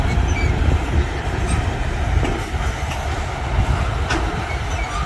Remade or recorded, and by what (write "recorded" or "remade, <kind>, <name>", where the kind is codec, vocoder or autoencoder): recorded